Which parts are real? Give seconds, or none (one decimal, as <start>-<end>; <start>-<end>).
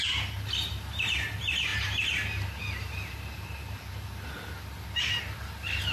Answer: 0.0-5.9